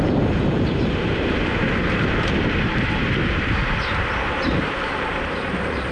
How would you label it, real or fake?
fake